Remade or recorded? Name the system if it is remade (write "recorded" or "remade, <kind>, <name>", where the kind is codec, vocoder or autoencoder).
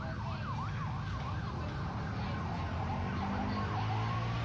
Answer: recorded